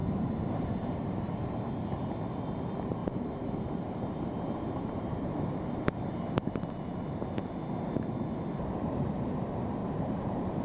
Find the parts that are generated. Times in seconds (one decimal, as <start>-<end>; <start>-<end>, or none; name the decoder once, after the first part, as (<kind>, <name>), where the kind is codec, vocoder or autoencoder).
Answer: 0.0-1.6 (vocoder, BigVGAN v2); 3.0-7.2; 9.8-10.6